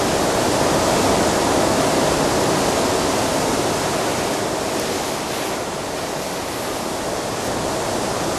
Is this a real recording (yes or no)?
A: yes